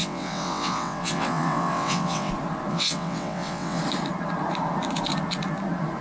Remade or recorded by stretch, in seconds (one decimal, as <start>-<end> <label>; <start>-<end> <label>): 0.0-2.3 remade; 2.3-2.7 recorded; 2.7-3.8 remade; 3.8-6.0 recorded